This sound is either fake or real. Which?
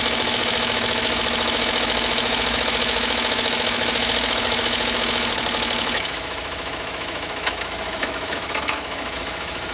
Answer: fake